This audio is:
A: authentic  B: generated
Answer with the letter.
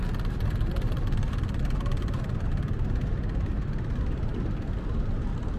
A